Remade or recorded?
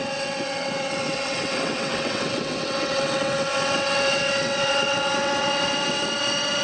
remade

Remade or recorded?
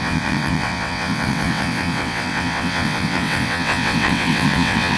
remade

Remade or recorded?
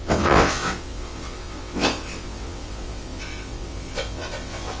remade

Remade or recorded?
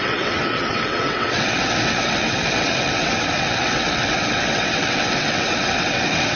remade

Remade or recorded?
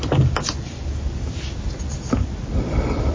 recorded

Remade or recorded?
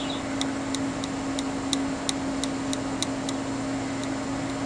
recorded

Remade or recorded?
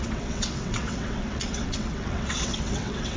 remade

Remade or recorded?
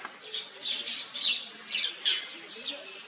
recorded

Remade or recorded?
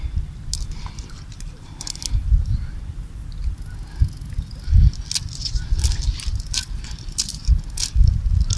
recorded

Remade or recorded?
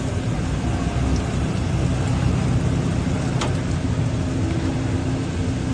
recorded